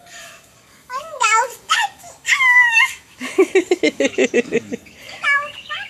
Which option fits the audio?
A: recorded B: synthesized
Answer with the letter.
B